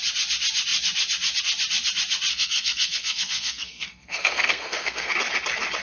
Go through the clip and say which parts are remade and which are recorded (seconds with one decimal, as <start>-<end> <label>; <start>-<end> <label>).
0.0-2.3 recorded; 2.3-5.1 remade; 5.1-5.8 recorded